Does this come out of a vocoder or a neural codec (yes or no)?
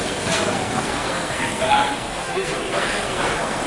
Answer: yes